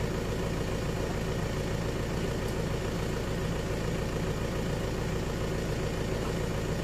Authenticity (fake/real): real